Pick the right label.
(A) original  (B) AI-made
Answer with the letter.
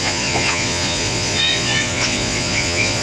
B